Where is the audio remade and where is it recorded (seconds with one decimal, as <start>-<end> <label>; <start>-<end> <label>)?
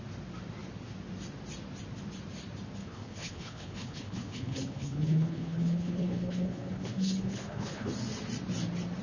0.0-2.8 recorded; 2.8-7.9 remade; 7.9-9.0 recorded